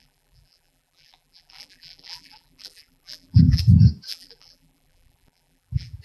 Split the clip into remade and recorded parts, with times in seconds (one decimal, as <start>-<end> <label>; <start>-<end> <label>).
0.0-3.6 remade; 3.6-4.1 recorded; 4.1-6.0 remade